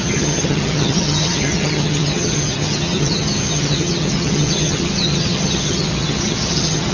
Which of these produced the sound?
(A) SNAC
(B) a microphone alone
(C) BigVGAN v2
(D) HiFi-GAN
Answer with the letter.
D